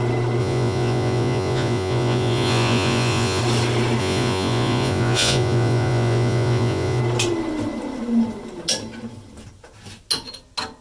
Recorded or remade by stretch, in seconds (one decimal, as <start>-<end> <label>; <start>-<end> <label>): 0.0-0.4 recorded; 0.4-3.4 remade; 3.4-4.0 recorded; 4.0-7.0 remade; 7.0-10.8 recorded